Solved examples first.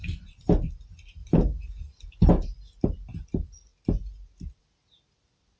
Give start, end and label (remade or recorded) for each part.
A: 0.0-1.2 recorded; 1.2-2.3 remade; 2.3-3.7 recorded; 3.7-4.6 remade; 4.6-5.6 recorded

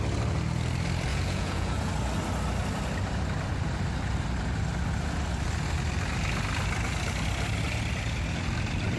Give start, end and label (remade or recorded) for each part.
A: 0.0-1.1 recorded; 1.1-1.9 remade; 1.9-9.0 recorded

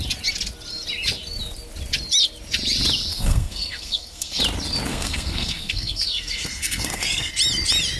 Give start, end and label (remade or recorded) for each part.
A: 0.0-3.1 recorded; 3.1-4.4 remade; 4.4-4.9 recorded; 4.9-7.3 remade; 7.3-8.0 recorded

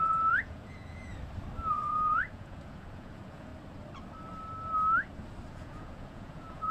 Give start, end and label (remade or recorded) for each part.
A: 0.0-1.1 remade; 1.1-1.7 recorded; 1.7-3.5 remade; 3.5-5.5 recorded; 5.5-6.7 remade

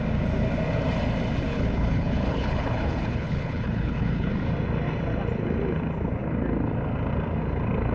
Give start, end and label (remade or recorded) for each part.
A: 0.0-1.5 recorded; 1.5-4.3 remade; 4.3-7.9 recorded

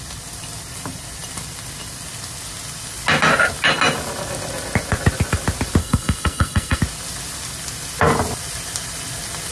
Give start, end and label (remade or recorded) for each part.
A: 0.0-5.8 recorded; 5.8-6.8 remade; 6.8-9.5 recorded

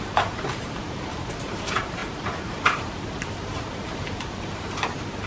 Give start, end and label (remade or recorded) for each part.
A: 0.0-5.3 remade

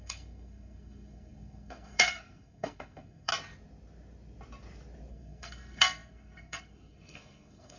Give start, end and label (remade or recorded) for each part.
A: 0.0-3.3 remade; 3.3-5.1 recorded; 5.1-7.8 remade